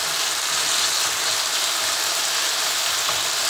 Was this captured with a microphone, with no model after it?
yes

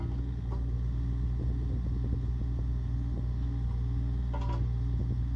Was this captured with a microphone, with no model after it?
yes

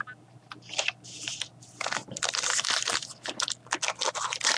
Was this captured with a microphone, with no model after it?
yes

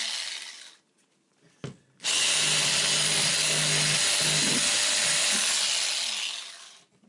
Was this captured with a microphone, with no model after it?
yes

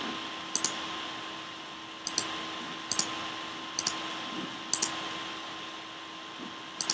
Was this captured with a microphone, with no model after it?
yes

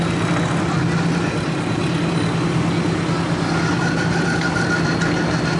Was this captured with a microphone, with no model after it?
yes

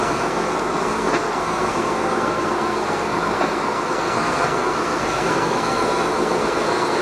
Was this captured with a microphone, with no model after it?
no